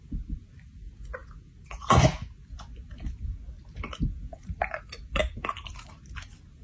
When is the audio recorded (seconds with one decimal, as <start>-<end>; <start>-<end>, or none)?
0.0-6.6